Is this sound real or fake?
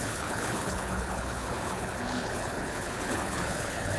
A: fake